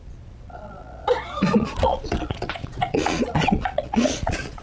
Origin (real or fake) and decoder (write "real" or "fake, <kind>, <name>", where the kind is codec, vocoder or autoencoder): fake, vocoder, Vocos